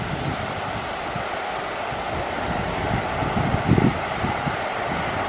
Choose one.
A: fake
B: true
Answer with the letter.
B